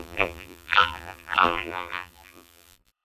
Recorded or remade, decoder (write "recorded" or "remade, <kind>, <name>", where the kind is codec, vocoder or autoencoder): remade, vocoder, BigVGAN v2